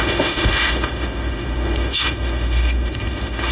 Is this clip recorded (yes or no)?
no